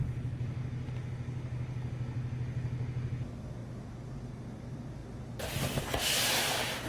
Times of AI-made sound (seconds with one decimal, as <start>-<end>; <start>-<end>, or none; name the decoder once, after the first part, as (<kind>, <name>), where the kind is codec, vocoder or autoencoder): none